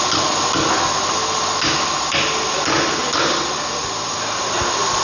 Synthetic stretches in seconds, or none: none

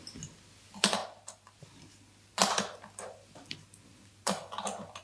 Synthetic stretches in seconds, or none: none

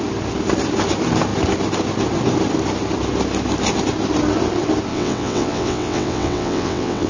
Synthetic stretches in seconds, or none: 4.9-7.1

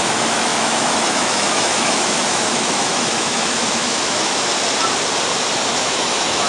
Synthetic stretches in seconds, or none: 0.0-4.5; 5.7-6.5

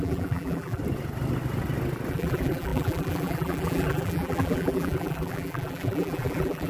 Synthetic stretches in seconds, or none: 0.0-0.8; 2.1-6.7

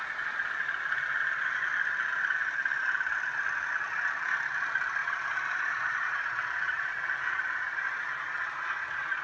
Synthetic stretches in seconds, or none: 5.0-7.9

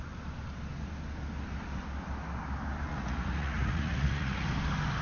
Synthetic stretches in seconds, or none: 2.9-4.5